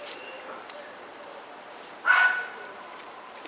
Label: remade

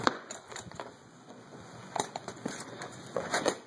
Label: remade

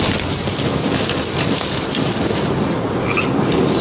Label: recorded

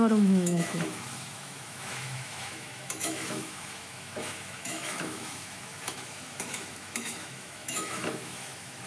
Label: remade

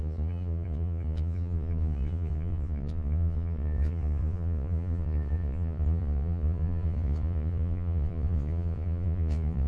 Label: remade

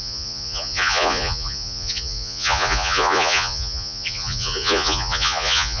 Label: remade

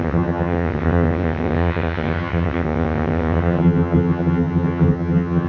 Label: remade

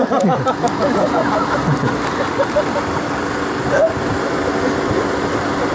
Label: recorded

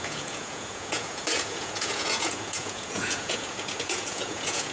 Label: remade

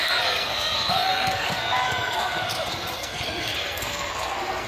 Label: remade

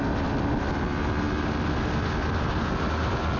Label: recorded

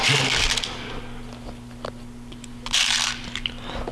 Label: recorded